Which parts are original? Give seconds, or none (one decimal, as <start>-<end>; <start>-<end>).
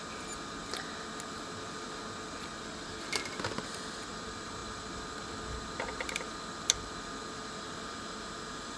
0.0-8.8